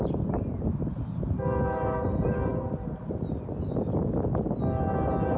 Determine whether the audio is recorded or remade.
recorded